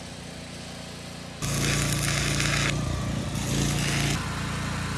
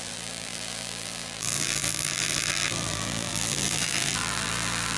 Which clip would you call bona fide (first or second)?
first